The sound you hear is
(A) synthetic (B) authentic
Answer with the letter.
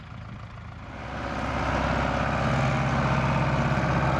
B